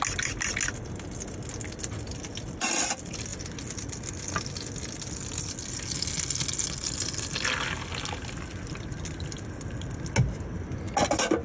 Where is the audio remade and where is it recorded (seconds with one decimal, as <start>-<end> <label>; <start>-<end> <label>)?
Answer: 0.0-11.4 recorded